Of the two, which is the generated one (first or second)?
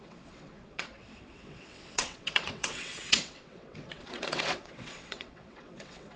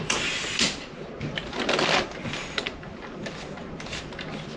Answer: first